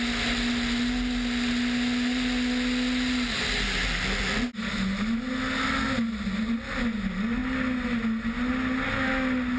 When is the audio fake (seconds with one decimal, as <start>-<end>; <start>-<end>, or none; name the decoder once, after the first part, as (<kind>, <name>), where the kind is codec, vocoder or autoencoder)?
none